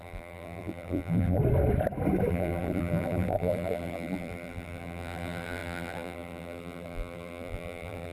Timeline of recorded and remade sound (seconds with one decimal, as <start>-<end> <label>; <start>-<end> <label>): 0.0-1.4 remade; 1.4-2.3 recorded; 2.3-8.1 remade

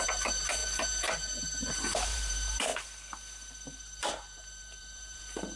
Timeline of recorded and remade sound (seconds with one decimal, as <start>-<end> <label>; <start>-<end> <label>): 0.0-2.7 remade; 2.7-4.0 recorded; 4.0-5.6 remade